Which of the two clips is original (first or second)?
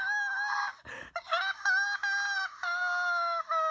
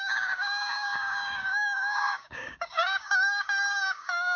first